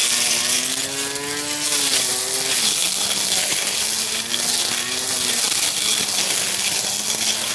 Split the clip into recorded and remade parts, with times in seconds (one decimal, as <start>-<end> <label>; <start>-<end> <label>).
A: 0.0-7.5 recorded